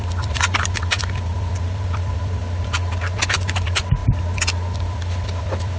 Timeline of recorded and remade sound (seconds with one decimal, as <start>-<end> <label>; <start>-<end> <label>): 0.0-2.4 remade; 2.4-3.3 recorded; 3.3-4.0 remade; 4.0-4.8 recorded; 4.8-5.8 remade